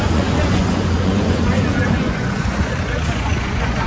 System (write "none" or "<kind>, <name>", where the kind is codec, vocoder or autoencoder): vocoder, Vocos